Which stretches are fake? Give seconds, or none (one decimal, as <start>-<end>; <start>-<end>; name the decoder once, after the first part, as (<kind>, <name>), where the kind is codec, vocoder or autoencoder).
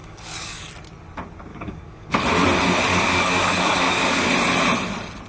0.0-0.7 (codec, DAC); 1.5-2.1; 2.9-4.3